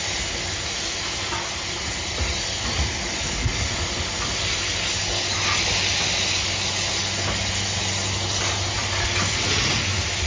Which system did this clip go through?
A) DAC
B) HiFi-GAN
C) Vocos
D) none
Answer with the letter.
D